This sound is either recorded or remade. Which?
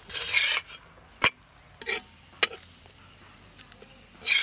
recorded